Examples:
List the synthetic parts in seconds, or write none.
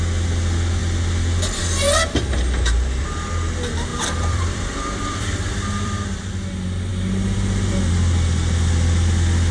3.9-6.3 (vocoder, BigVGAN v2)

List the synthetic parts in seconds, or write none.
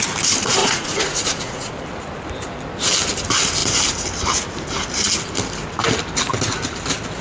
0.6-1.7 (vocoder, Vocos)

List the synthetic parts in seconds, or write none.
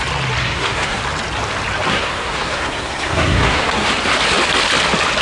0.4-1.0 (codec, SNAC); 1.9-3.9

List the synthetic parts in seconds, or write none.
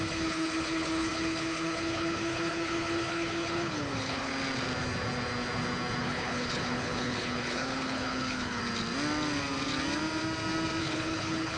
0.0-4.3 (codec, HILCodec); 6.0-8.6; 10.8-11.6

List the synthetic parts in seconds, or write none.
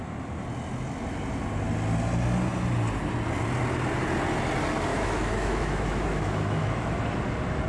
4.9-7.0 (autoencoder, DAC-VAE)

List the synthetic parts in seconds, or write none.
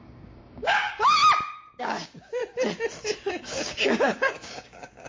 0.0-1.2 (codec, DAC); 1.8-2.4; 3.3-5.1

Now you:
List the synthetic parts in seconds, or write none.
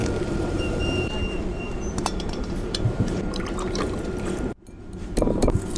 0.0-5.8 (vocoder, BigVGAN v2)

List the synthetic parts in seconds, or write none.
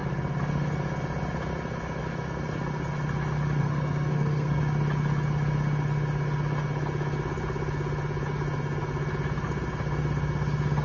3.6-4.6 (codec, SNAC)